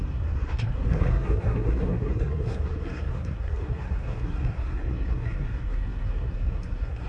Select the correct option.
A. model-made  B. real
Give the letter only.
A